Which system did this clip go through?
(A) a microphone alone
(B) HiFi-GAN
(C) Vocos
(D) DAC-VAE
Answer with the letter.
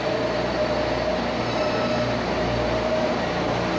A